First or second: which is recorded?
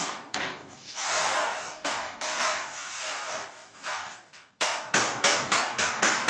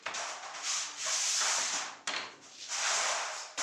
second